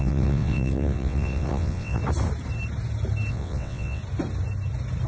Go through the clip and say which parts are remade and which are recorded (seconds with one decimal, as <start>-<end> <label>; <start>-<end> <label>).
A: 0.0-2.0 remade; 2.0-3.3 recorded; 3.3-4.0 remade; 4.0-5.1 recorded